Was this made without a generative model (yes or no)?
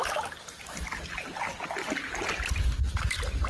yes